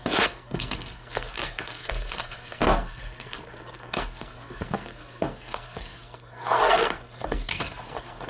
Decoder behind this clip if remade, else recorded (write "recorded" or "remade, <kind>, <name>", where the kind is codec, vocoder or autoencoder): remade, codec, SNAC